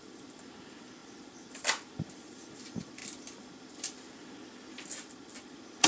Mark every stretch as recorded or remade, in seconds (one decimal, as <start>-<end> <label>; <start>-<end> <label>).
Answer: 0.0-5.9 recorded